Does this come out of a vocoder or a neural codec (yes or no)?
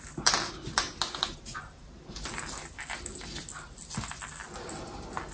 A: no